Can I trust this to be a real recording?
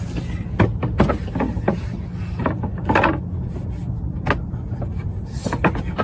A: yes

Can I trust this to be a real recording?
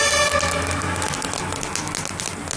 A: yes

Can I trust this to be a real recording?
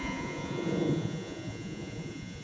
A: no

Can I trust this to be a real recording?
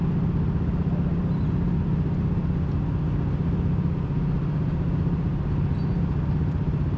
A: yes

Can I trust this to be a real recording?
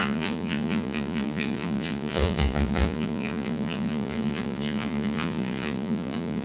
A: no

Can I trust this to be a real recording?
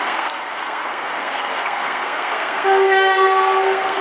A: no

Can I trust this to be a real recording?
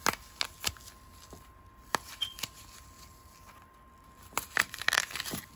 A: yes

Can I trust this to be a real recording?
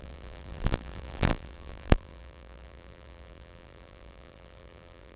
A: no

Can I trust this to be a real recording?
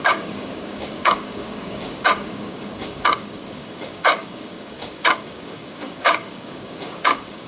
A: no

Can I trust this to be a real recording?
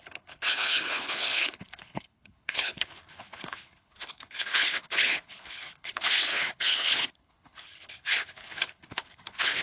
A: no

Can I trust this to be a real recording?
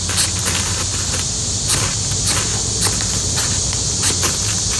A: yes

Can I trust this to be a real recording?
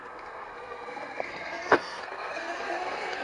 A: no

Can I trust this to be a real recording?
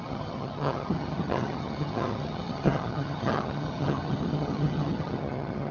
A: no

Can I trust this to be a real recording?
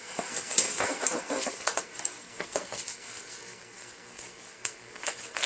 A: no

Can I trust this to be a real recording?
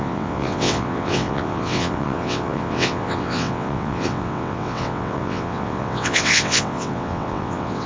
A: no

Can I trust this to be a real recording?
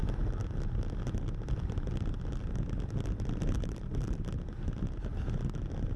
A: yes